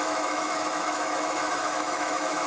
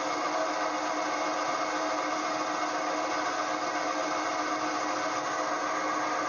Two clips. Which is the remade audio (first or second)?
first